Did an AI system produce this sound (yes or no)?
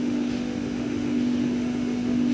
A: yes